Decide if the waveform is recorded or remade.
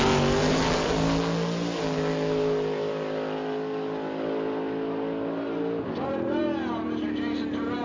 recorded